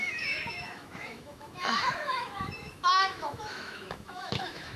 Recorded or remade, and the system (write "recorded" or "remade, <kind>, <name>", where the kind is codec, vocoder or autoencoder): remade, autoencoder, DAC-VAE